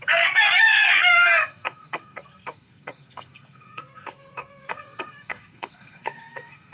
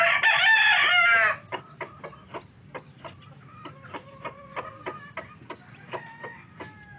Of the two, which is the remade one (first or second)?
first